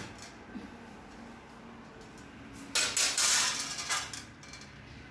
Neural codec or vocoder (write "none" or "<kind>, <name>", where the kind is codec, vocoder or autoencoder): none